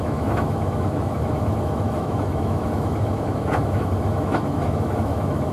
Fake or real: fake